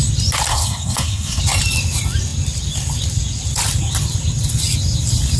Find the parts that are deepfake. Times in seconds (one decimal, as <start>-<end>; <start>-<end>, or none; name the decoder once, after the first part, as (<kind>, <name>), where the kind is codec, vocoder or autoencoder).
0.5-1.4 (codec, SNAC)